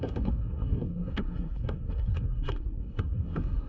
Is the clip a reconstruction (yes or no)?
yes